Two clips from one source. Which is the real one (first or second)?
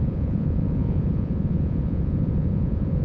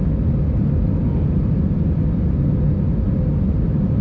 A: second